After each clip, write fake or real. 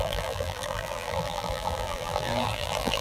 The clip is fake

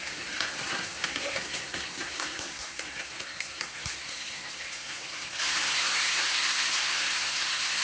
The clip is fake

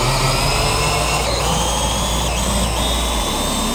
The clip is real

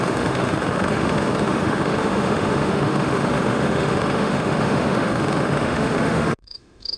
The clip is fake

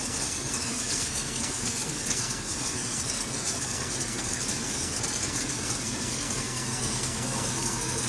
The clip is fake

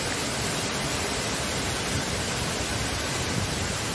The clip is real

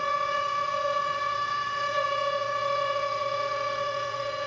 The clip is fake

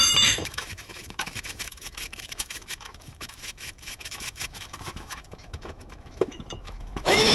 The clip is fake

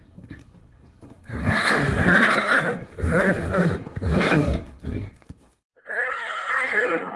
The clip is fake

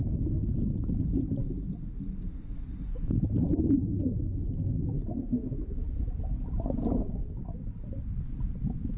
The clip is real